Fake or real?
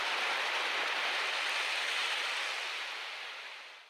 real